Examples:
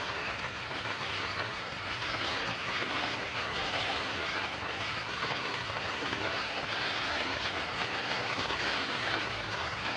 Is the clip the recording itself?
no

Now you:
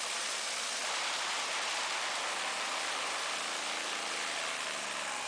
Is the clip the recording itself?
yes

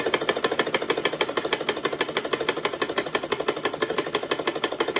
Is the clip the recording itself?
yes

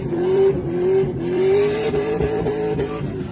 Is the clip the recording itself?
no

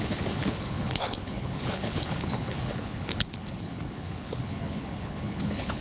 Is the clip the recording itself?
no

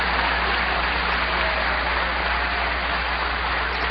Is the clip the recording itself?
yes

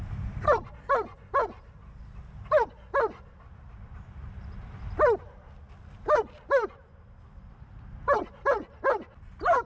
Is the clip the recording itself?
yes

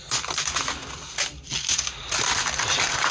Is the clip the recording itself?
yes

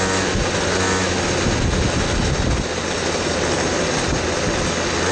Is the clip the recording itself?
yes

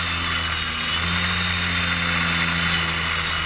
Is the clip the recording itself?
yes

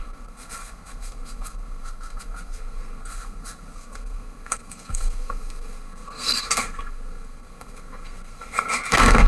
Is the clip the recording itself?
no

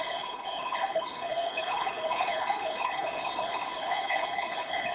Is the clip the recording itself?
no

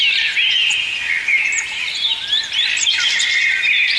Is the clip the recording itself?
yes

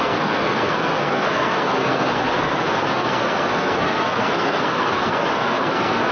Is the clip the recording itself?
no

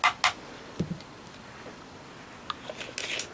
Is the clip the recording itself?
yes